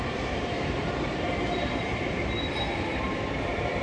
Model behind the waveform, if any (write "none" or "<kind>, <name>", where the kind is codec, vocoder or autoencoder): vocoder, BigVGAN v2